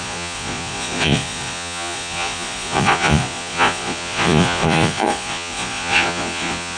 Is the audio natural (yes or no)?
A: no